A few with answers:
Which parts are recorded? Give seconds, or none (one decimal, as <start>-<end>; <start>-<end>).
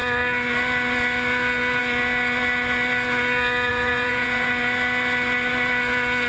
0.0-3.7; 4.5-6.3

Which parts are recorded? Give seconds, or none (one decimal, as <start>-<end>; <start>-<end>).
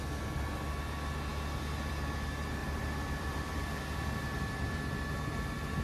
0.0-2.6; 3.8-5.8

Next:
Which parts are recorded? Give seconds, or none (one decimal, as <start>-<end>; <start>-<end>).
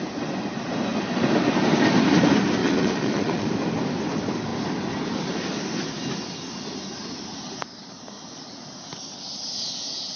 0.0-2.6; 3.5-10.2